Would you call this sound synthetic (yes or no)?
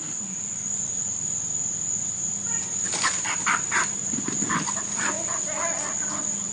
no